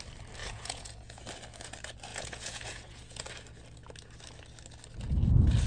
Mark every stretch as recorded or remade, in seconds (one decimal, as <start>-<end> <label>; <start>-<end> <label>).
0.0-0.4 recorded; 0.4-1.2 remade; 1.2-2.1 recorded; 2.1-3.2 remade; 3.2-5.7 recorded